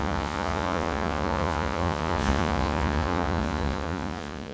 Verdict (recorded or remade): remade